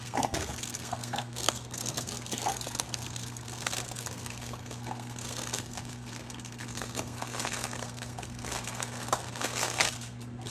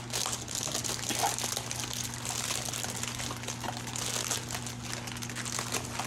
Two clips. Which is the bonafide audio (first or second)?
second